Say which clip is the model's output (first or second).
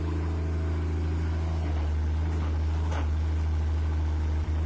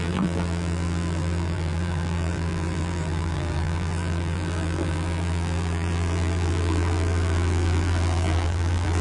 second